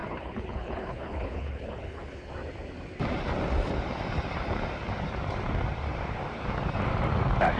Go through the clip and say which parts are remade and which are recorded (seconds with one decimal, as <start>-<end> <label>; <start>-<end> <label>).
0.0-2.3 remade; 2.3-7.6 recorded